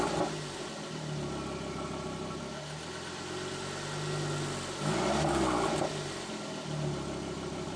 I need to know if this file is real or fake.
real